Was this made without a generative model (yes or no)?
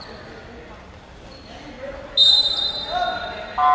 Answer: yes